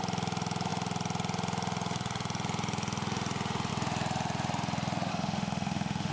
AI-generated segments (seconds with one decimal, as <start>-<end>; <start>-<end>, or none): 5.1-6.1